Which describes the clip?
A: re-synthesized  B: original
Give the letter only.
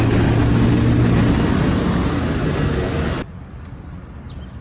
B